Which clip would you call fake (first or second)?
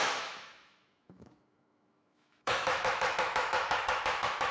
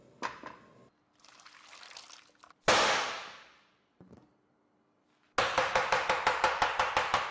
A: first